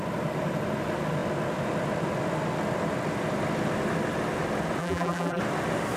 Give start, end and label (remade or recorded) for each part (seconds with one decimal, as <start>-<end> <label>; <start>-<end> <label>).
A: 0.0-4.8 recorded; 4.8-5.4 remade; 5.4-6.0 recorded